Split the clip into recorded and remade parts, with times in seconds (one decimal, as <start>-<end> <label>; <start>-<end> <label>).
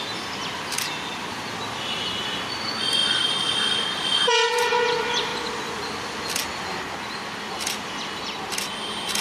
0.0-3.0 recorded; 3.0-3.6 remade; 3.6-9.2 recorded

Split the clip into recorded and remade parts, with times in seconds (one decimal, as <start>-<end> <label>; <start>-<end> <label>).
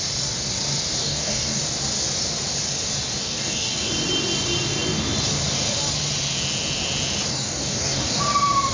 0.0-1.0 recorded; 1.0-1.6 remade; 1.6-3.2 recorded; 3.2-3.9 remade; 3.9-7.3 recorded; 7.3-8.2 remade; 8.2-8.7 recorded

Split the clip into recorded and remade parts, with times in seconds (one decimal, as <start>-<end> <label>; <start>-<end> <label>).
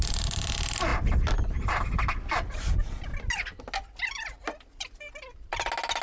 0.0-6.0 recorded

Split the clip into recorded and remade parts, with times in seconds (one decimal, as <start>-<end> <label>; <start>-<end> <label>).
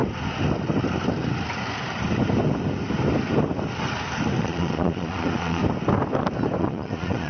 0.0-4.4 recorded; 4.4-5.6 remade; 5.6-6.6 recorded; 6.6-7.3 remade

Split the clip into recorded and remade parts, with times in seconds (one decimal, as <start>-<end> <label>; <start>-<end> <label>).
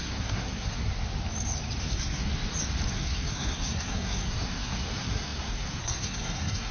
0.0-0.9 remade; 0.9-1.8 recorded; 1.8-2.3 remade; 2.3-2.9 recorded; 2.9-6.7 remade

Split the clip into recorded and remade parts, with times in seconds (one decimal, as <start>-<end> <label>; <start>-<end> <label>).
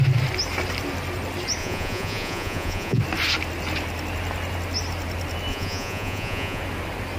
0.0-1.6 recorded; 1.6-3.0 remade; 3.0-5.5 recorded; 5.5-6.6 remade; 6.6-7.2 recorded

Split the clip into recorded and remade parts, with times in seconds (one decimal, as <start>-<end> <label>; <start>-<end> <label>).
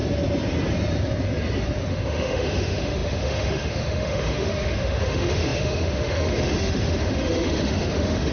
0.0-1.9 recorded; 1.9-8.3 remade